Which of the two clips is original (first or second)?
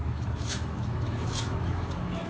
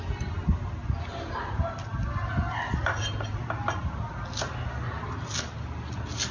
second